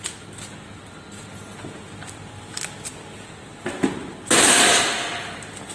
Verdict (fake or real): real